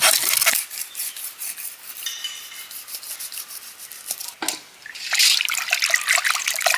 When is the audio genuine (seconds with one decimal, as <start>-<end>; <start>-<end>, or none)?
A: 0.0-6.8